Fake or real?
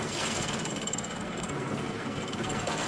fake